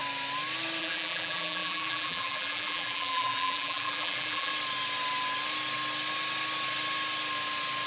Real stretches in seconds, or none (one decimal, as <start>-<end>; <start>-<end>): 0.0-0.8; 4.5-7.9